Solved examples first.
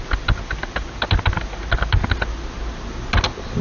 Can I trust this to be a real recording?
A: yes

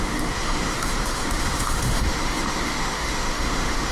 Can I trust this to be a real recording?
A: no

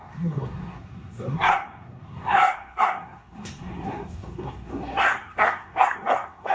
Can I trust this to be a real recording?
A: no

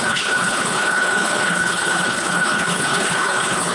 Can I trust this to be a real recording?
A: no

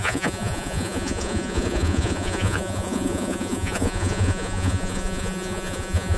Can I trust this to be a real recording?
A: no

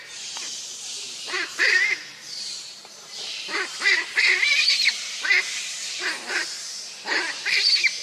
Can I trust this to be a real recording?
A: no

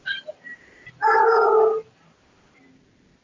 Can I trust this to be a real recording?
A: yes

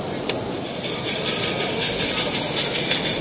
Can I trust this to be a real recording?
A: yes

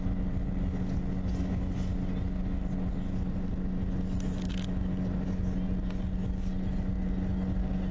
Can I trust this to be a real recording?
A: yes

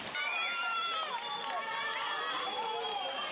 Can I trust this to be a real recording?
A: yes